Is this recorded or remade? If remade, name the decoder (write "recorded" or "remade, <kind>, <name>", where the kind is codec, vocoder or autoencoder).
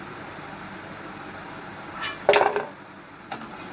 recorded